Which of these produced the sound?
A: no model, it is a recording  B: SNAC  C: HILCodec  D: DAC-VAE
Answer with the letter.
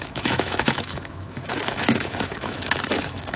D